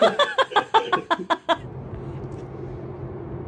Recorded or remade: recorded